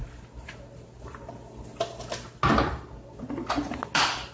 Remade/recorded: recorded